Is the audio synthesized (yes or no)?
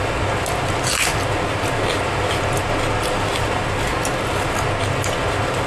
no